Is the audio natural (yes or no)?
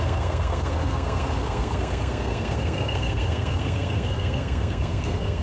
no